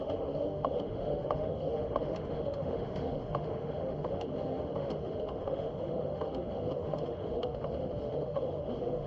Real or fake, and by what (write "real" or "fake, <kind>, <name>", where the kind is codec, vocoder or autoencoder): fake, autoencoder, DAC-VAE